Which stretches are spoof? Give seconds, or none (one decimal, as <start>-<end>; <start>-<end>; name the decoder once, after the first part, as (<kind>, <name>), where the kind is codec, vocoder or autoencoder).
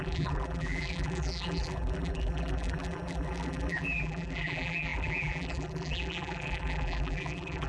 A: 0.0-7.7 (vocoder, BigVGAN v2)